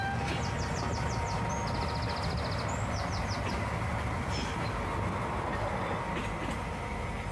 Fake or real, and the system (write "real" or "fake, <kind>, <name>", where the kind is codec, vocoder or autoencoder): real